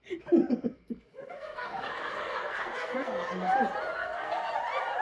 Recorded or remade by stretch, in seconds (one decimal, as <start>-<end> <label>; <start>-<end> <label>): 0.0-0.5 recorded; 0.5-3.5 remade; 3.5-4.0 recorded; 4.0-4.5 remade; 4.5-5.0 recorded